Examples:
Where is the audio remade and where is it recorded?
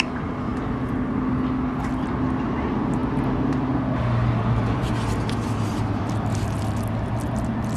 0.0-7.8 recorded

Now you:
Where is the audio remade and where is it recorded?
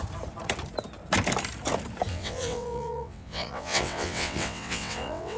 0.0-2.1 recorded; 2.1-5.4 remade